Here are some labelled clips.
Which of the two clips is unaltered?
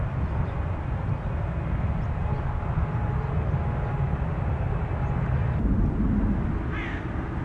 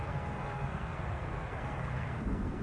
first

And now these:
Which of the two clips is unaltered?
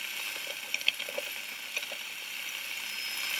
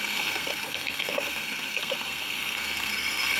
first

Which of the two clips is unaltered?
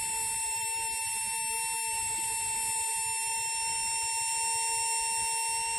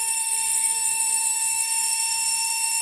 first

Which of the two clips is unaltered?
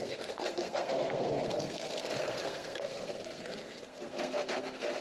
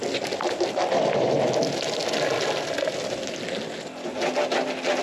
second